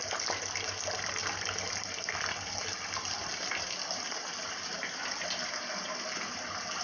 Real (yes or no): yes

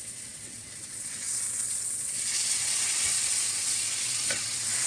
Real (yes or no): no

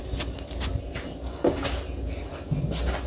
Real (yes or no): yes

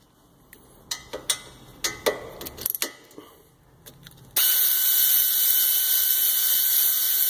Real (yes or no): yes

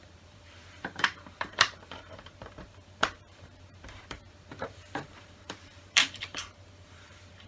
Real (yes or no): no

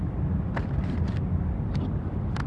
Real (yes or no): yes